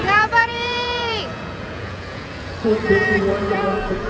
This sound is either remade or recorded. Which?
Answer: remade